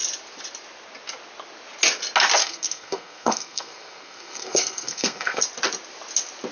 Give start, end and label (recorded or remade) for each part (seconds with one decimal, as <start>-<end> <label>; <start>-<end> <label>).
0.0-2.4 recorded; 2.4-5.4 remade; 5.4-6.5 recorded